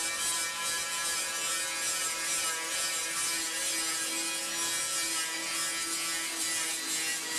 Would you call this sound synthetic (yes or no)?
no